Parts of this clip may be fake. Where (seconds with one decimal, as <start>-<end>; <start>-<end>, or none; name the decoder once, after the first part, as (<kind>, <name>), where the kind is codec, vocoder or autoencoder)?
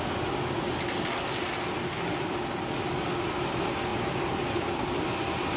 none